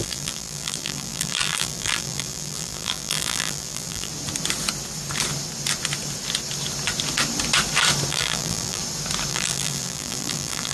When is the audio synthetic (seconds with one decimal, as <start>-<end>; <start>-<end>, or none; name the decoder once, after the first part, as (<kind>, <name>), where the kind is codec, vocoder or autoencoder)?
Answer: 0.0-4.1 (vocoder, BigVGAN v2); 8.1-8.8; 9.3-10.7